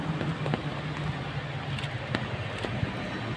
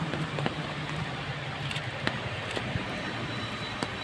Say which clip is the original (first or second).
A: first